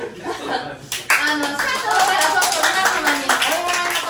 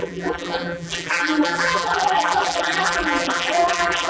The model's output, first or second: second